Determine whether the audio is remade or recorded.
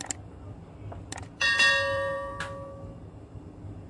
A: recorded